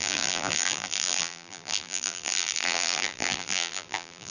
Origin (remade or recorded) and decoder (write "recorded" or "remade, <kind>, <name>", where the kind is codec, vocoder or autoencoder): remade, vocoder, BigVGAN v2